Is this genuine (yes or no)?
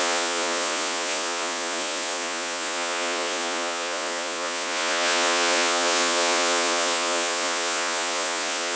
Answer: no